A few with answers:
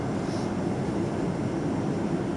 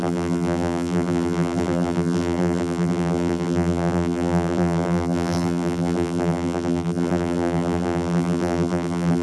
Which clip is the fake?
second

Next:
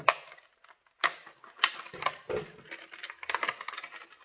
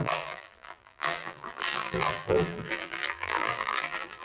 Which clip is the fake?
second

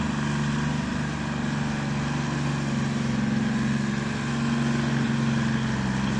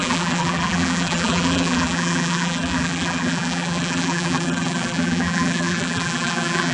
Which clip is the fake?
second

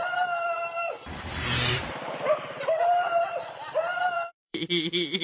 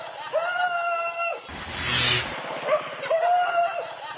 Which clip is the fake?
first